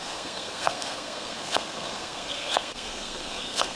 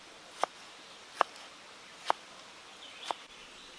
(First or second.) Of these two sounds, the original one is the second